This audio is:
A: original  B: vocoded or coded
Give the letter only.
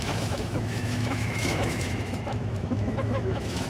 B